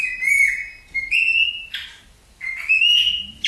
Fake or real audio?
real